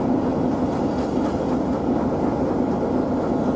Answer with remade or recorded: recorded